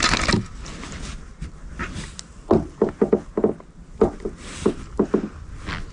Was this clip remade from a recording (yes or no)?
no